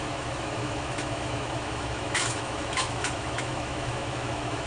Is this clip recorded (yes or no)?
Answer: no